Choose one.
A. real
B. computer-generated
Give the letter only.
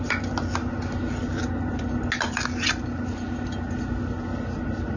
A